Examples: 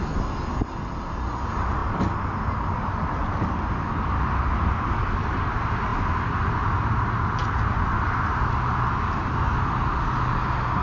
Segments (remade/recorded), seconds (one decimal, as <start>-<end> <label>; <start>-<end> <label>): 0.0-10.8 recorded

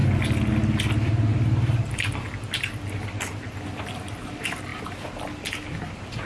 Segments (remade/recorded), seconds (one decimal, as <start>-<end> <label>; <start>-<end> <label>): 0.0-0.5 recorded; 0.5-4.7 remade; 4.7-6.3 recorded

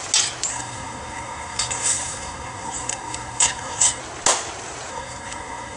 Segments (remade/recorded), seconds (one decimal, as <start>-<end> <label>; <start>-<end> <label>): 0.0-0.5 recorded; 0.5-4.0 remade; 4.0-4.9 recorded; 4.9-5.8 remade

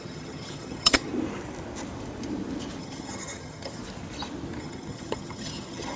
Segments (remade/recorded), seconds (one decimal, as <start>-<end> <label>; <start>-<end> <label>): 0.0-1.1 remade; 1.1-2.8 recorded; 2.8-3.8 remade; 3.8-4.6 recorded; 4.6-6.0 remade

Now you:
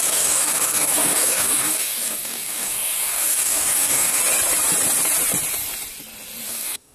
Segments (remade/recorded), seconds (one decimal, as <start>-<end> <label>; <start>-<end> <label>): 0.0-4.2 remade; 4.2-6.5 recorded; 6.5-6.9 remade

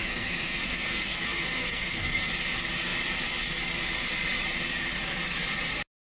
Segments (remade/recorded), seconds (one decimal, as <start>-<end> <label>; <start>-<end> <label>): 0.0-2.3 remade; 2.3-6.1 recorded

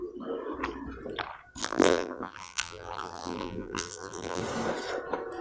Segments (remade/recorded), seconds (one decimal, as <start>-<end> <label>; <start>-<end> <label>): 0.0-1.6 recorded; 1.6-4.4 remade; 4.4-5.4 recorded